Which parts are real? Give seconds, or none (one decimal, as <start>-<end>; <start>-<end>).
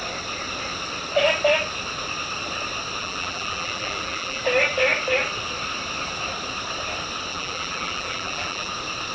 0.0-3.0; 4.4-7.3; 8.7-9.1